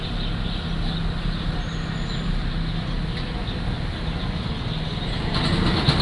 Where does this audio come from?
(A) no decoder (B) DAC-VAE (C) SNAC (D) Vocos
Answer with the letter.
A